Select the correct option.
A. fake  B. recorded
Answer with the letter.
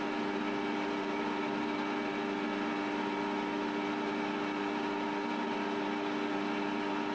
B